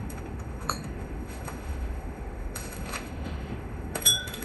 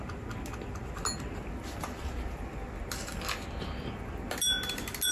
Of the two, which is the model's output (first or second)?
first